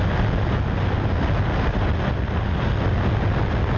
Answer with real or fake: real